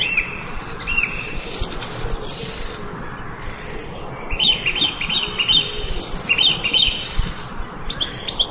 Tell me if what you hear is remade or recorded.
remade